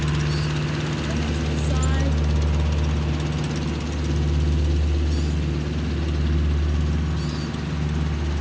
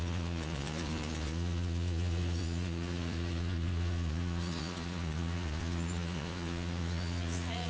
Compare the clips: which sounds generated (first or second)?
second